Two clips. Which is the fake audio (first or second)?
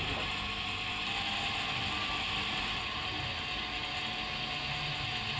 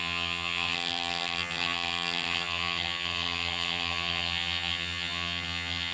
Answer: second